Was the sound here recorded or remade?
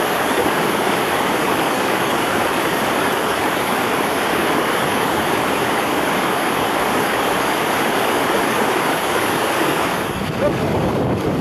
remade